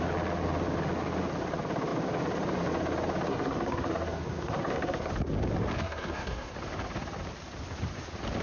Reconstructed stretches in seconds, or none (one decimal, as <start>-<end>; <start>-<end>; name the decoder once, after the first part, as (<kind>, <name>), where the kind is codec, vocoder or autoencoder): 3.3-5.1 (codec, SNAC); 5.8-6.5